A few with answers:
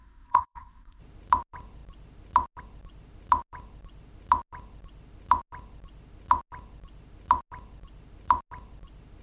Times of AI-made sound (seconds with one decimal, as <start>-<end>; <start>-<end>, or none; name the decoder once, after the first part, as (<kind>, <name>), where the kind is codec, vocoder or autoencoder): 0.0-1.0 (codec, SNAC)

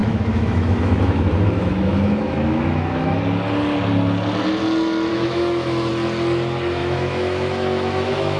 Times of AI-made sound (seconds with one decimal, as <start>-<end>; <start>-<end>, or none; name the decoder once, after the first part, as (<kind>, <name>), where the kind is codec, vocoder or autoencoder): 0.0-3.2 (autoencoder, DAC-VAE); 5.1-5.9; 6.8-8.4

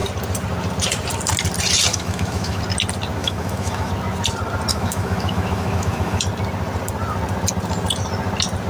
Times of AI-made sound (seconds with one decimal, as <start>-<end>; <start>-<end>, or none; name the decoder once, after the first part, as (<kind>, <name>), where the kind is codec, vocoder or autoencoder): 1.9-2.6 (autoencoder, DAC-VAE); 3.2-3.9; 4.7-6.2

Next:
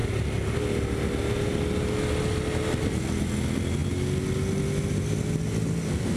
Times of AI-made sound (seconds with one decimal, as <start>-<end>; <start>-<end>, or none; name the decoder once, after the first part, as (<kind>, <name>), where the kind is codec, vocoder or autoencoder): none

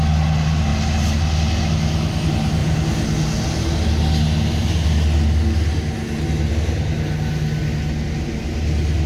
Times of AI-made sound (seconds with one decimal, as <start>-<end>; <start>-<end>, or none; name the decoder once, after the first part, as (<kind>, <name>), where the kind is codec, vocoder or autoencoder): none

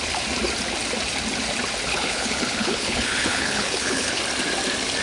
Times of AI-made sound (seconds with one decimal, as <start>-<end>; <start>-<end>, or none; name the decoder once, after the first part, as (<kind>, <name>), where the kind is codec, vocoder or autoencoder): 1.9-4.2 (codec, HILCodec)

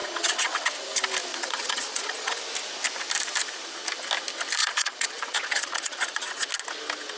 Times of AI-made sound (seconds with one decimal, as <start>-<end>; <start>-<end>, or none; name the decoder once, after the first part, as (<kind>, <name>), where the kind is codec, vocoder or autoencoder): 0.0-0.7 (vocoder, Vocos); 1.3-2.4; 4.6-6.5